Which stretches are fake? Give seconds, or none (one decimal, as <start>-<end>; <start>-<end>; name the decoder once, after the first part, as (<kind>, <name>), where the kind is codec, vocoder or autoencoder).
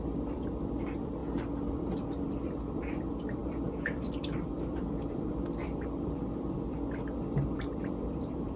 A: 0.0-1.2 (vocoder, BigVGAN v2); 1.7-8.6